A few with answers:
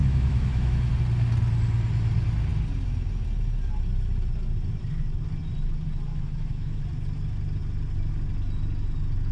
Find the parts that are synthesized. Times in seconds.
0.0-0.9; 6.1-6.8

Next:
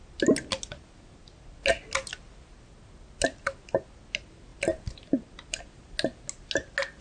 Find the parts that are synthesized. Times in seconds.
none

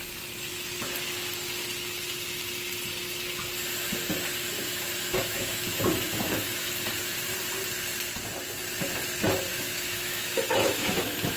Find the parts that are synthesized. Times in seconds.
4.3-6.7; 9.5-11.4